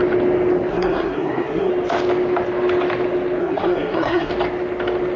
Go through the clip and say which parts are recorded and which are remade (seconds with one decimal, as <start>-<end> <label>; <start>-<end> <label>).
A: 0.0-0.7 recorded; 0.7-1.7 remade; 1.7-3.4 recorded; 3.4-4.3 remade; 4.3-5.2 recorded